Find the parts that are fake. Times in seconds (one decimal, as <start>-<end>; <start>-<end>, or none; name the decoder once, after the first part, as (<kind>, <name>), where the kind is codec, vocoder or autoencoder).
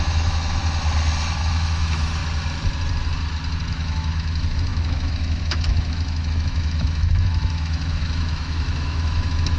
0.0-0.6 (autoencoder, DAC-VAE); 1.4-2.2; 3.7-9.6